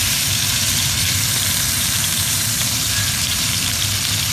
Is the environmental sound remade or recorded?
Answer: remade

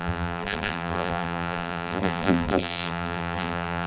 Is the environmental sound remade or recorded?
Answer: remade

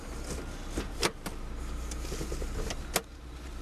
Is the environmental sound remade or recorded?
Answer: recorded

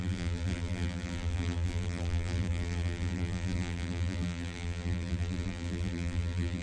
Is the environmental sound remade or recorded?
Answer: remade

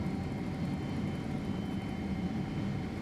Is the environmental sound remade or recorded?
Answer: recorded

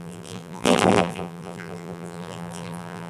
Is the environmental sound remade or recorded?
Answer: remade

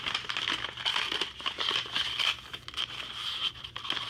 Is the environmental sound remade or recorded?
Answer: recorded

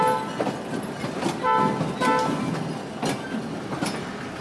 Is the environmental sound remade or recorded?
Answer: recorded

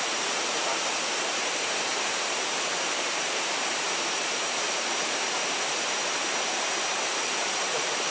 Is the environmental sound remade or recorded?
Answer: remade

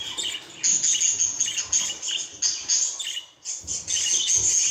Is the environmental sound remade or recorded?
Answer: recorded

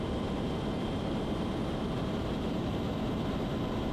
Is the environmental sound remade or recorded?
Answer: remade